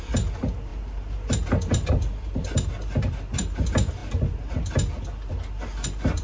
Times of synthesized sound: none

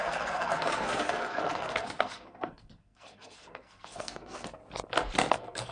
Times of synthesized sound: 0.0-4.6 (codec, SNAC); 5.3-5.7

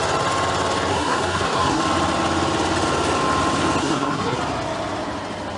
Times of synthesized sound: 0.9-1.8 (codec, SNAC); 3.8-4.4

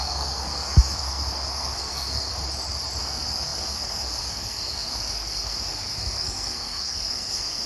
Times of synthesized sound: 0.0-2.3 (codec, SNAC); 3.0-7.7

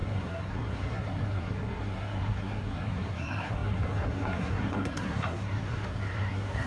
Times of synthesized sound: 0.0-6.7 (codec, SNAC)

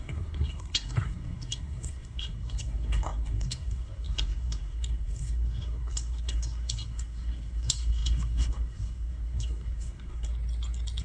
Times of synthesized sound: 0.0-10.3 (codec, SNAC)